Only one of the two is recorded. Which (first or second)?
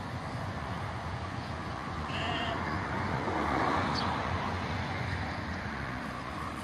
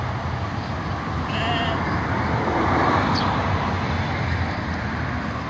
second